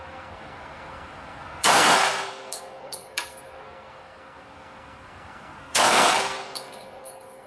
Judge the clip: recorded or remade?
remade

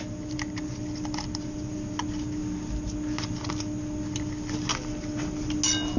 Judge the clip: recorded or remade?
recorded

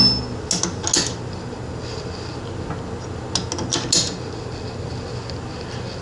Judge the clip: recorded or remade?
recorded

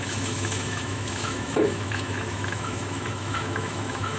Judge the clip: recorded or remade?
remade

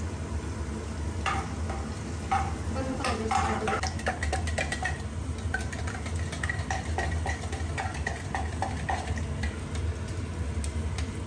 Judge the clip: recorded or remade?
recorded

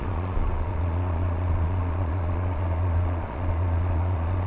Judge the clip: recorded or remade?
remade